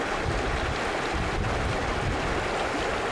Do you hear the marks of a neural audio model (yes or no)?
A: no